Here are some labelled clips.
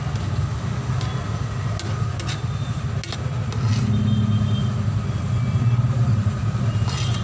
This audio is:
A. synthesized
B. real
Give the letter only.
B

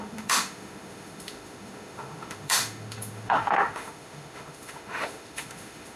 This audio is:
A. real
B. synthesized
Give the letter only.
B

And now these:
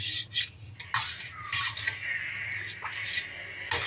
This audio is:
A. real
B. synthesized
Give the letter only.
A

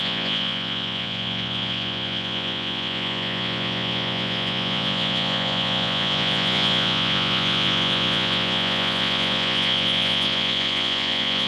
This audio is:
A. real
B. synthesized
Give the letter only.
B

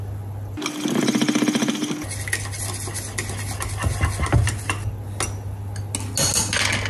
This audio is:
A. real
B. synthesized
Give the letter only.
A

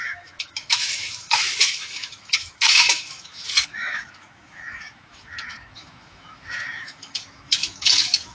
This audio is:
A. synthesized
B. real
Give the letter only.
A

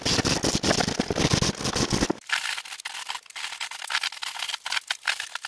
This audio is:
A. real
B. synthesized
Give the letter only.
A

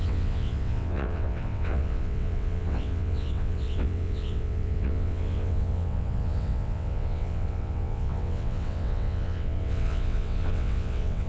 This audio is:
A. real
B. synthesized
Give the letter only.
B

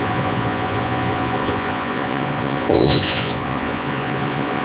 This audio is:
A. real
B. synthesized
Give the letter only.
B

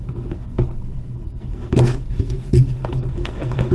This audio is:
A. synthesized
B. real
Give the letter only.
A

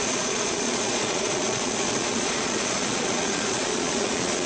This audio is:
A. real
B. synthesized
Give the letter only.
B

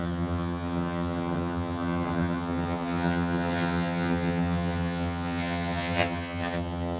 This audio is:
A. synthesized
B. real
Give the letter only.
A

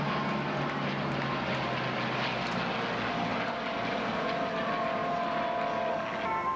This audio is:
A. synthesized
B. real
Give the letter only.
B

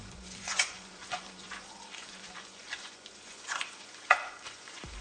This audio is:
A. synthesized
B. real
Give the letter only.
A